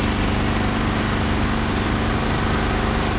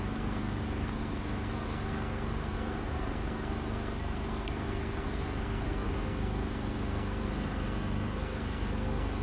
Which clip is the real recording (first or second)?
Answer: first